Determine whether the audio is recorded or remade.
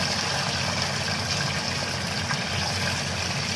recorded